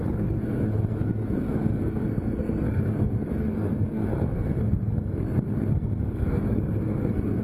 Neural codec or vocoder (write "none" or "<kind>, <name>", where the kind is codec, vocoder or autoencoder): codec, SNAC